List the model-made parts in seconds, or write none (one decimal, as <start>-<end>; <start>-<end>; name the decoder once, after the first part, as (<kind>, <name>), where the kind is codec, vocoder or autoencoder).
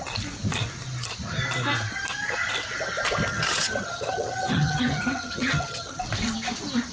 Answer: 3.3-6.0 (vocoder, HiFi-GAN)